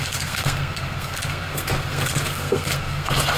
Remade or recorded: remade